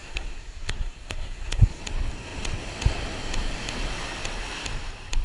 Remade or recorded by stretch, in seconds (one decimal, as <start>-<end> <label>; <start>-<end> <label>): 0.0-1.8 remade; 1.8-5.2 recorded